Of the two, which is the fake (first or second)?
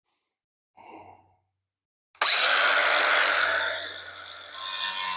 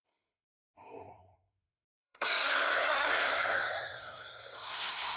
second